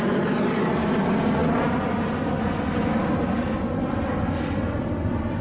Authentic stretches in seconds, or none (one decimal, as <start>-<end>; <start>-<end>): 0.0-3.0; 3.7-5.4

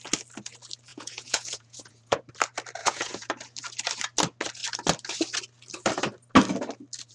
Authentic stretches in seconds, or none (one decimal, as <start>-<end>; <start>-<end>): 0.0-0.9; 2.2-2.8; 3.3-7.1

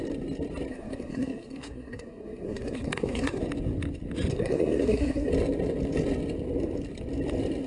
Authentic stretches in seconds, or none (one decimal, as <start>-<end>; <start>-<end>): 0.0-0.7; 3.4-4.3; 5.3-7.7

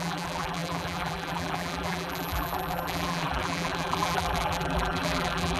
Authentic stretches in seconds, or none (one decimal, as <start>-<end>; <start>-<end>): none

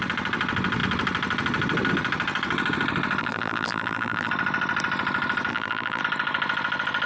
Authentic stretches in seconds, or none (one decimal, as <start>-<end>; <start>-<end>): 0.0-3.2; 4.3-5.5; 6.0-7.1

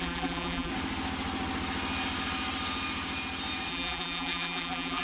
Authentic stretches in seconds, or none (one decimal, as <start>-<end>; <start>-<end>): 0.7-3.7

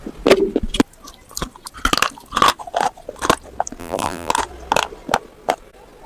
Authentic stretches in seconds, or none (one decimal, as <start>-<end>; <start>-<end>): 0.0-3.8; 4.3-6.1